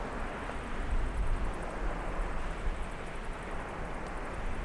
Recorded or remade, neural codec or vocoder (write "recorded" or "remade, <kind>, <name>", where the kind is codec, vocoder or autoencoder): recorded